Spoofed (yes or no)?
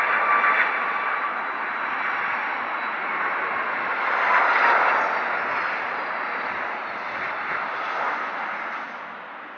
no